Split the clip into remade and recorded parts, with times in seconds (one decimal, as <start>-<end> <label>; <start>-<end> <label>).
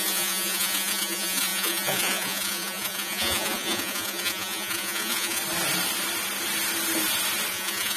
0.0-5.4 remade; 5.4-7.5 recorded; 7.5-8.0 remade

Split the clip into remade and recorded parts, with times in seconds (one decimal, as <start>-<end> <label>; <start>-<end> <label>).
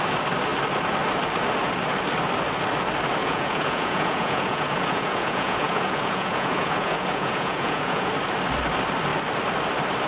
0.0-3.2 recorded; 3.2-8.1 remade; 8.1-10.1 recorded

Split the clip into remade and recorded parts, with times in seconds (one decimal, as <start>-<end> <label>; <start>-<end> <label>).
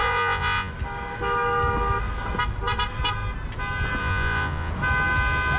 0.0-0.7 remade; 0.7-4.0 recorded; 4.0-4.7 remade; 4.7-5.6 recorded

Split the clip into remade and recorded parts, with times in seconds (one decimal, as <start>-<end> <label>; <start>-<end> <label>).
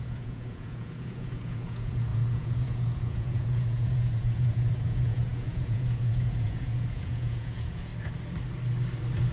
0.0-7.9 remade; 7.9-9.3 recorded